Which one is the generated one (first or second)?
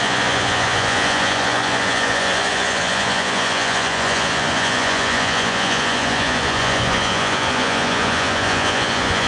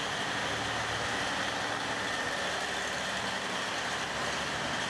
first